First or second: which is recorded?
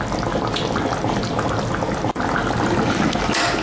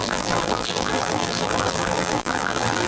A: first